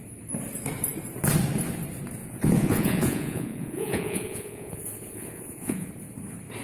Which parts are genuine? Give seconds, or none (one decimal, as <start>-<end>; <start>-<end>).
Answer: 0.0-2.2; 5.9-6.6